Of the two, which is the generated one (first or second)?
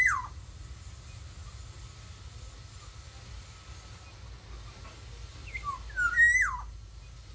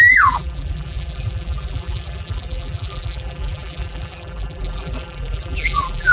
second